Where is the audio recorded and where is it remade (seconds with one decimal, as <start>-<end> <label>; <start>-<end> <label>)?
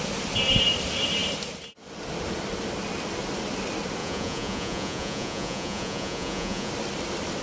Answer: 0.0-4.0 recorded; 4.0-6.7 remade; 6.7-7.4 recorded